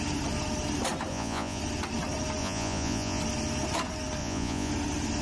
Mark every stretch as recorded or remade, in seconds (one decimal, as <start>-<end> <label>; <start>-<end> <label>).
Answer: 0.0-1.1 recorded; 1.1-1.6 remade; 1.6-2.4 recorded; 2.4-3.2 remade; 3.2-4.2 recorded; 4.2-4.7 remade; 4.7-5.2 recorded